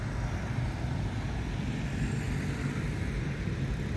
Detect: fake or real real